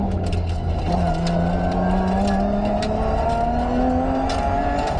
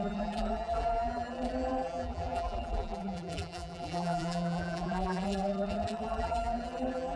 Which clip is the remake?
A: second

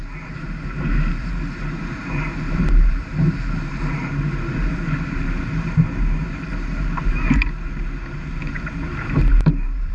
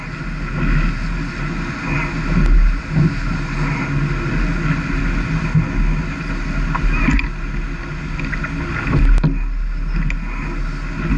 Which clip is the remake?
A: first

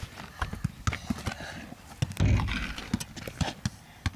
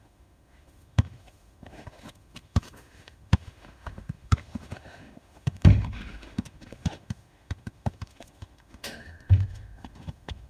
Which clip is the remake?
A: second